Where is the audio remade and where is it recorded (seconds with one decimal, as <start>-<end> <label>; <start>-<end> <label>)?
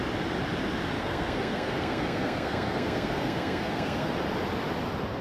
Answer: 0.0-1.0 recorded; 1.0-4.1 remade; 4.1-5.2 recorded